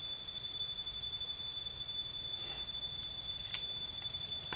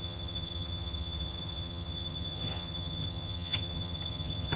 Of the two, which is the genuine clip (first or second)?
first